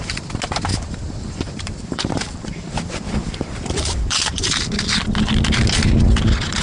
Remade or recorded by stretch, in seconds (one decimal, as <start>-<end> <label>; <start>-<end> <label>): 0.0-0.7 recorded; 0.7-4.6 remade; 4.6-6.6 recorded